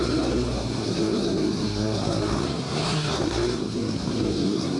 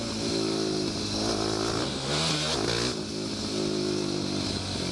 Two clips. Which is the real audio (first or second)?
second